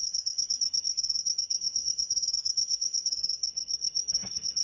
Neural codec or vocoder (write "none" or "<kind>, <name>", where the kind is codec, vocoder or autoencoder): codec, SNAC